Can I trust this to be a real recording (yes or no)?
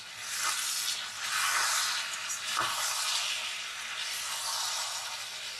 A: yes